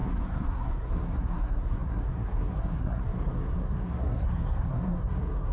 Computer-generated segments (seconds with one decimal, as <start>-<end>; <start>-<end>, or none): 0.0-5.5